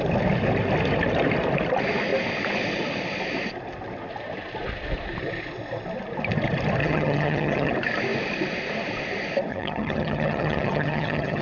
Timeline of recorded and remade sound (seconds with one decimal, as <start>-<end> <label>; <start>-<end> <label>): 0.0-6.8 recorded; 6.8-7.7 remade; 7.7-9.5 recorded; 9.5-11.4 remade